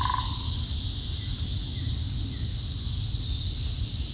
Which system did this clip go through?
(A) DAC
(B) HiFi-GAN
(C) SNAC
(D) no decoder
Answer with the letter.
D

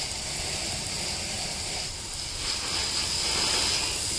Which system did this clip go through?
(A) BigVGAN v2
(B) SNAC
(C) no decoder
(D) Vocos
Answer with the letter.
C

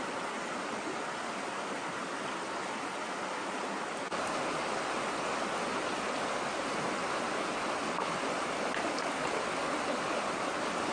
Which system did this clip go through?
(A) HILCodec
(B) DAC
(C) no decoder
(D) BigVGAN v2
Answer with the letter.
C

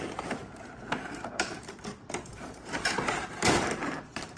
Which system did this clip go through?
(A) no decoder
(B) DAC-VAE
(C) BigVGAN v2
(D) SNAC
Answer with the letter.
C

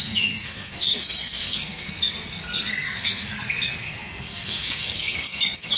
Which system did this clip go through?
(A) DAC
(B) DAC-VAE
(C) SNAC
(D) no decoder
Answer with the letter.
C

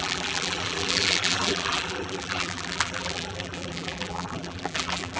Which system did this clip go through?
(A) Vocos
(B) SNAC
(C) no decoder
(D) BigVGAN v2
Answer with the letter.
D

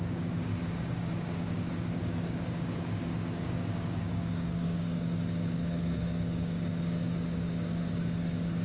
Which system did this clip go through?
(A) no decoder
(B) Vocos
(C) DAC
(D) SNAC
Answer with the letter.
C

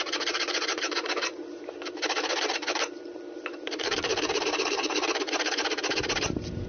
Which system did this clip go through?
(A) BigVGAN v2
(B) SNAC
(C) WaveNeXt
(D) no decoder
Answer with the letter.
A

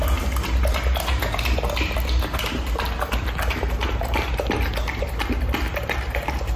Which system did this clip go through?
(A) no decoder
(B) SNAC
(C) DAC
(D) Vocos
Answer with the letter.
A